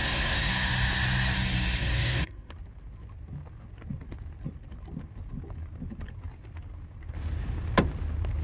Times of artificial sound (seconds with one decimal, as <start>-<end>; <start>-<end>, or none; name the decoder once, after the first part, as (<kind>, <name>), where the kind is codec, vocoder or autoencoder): 0.0-0.5 (codec, SNAC); 1.8-2.5